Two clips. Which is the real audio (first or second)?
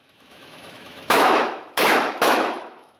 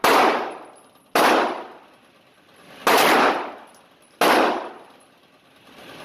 second